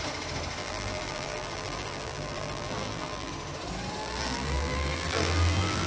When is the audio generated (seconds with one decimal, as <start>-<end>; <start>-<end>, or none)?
0.6-3.3; 4.0-5.9